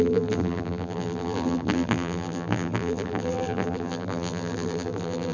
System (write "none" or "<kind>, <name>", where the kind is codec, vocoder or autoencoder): vocoder, BigVGAN v2